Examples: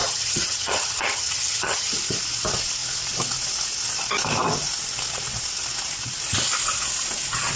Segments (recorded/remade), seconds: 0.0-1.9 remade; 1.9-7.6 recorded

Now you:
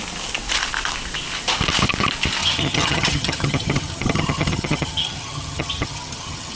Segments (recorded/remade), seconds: 0.0-2.4 recorded; 2.4-6.6 remade

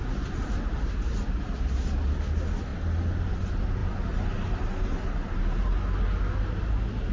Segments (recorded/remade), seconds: 0.0-7.1 recorded

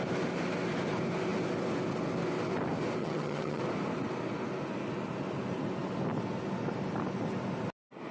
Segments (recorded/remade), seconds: 0.0-3.0 recorded; 3.0-3.6 remade; 3.6-8.1 recorded

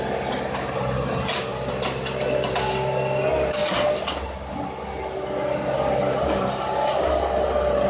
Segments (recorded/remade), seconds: 0.0-7.9 recorded